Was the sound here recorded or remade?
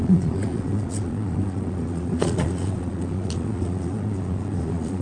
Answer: remade